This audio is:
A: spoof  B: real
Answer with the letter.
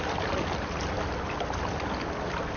B